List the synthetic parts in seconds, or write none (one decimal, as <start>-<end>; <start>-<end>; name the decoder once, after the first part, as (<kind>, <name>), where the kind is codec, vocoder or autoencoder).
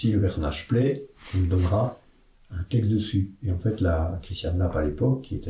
0.6-1.3 (vocoder, BigVGAN v2)